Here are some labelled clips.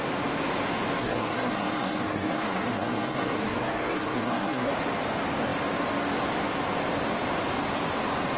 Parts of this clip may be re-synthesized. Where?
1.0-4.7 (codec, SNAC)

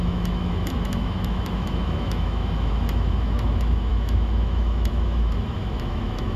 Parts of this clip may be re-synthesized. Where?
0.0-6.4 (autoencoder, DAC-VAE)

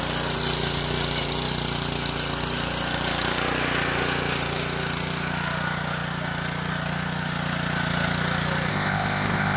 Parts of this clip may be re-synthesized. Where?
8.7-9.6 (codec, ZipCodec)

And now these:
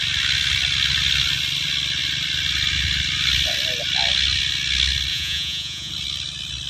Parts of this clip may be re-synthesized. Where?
5.1-5.9 (vocoder, Vocos)

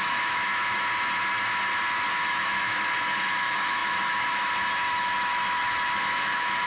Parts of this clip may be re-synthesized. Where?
0.0-0.5 (autoencoder, DAC-VAE); 2.1-6.7

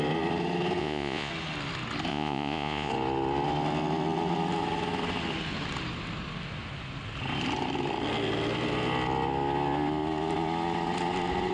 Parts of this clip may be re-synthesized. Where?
0.8-1.3 (vocoder, Vocos); 2.1-2.9

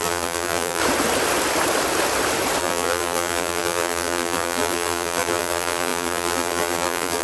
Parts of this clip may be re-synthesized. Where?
0.0-0.8 (vocoder, BigVGAN v2); 2.6-7.2

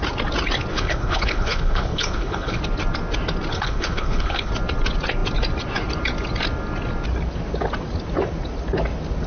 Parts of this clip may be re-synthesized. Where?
0.7-2.6 (codec, HILCodec); 3.5-4.5